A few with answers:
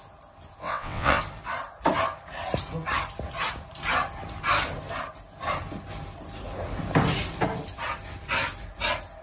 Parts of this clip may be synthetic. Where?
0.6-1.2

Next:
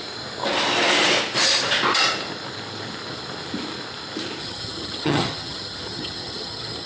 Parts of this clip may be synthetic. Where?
4.4-6.9

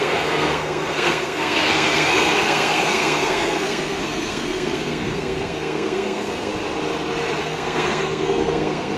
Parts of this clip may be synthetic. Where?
0.0-6.5; 7.4-9.0

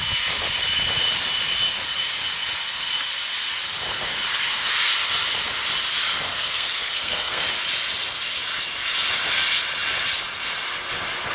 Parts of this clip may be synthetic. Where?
6.3-7.4

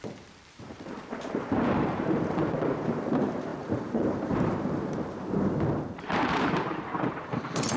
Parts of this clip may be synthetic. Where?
0.0-7.8

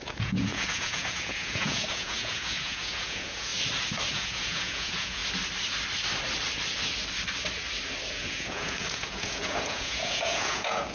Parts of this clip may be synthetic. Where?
0.0-3.5; 4.1-5.2; 8.1-10.9

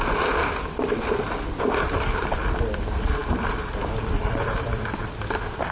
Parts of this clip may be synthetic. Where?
0.4-1.6; 4.2-5.0

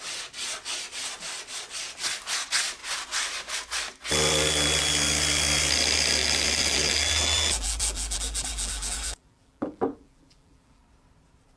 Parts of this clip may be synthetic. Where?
6.2-10.8